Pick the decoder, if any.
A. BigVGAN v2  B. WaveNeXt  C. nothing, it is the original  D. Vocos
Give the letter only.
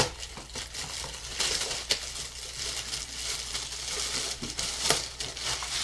C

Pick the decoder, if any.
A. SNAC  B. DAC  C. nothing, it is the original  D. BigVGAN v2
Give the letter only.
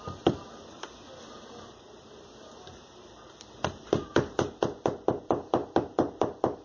D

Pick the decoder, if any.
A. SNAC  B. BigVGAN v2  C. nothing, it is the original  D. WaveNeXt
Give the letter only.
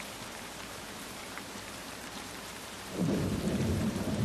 B